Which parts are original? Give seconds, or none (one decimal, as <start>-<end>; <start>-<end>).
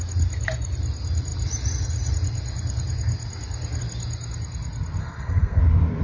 0.0-5.0; 5.6-6.0